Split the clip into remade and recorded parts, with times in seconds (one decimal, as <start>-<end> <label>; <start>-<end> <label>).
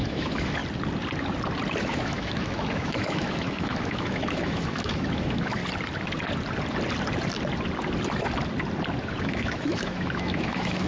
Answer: 0.0-0.6 remade; 0.6-1.8 recorded; 1.8-5.6 remade; 5.6-9.2 recorded; 9.2-10.9 remade